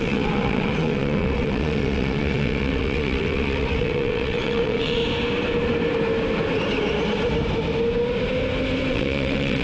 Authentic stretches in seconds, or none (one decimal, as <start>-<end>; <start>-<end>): 5.0-8.9